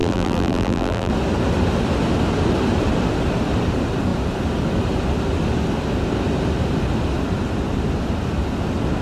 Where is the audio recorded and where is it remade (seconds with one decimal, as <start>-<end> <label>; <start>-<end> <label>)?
0.0-1.1 remade; 1.1-9.0 recorded